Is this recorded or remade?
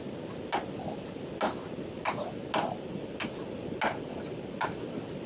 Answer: recorded